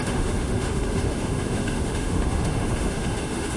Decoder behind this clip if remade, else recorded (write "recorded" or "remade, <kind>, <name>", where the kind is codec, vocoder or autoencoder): remade, autoencoder, DAC-VAE